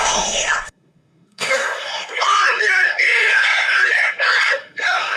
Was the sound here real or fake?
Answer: fake